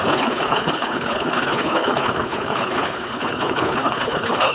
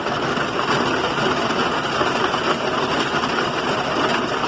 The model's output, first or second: first